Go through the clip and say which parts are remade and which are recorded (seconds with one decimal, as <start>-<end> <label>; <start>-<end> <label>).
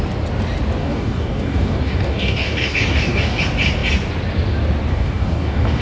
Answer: 0.0-0.8 recorded; 0.8-3.4 remade; 3.4-4.9 recorded; 4.9-5.8 remade